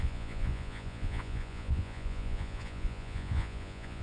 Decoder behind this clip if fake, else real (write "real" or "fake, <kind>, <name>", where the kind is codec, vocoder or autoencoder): fake, vocoder, Vocos